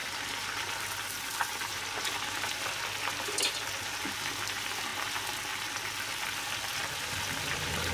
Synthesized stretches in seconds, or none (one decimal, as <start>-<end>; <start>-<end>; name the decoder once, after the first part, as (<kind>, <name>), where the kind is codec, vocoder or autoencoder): none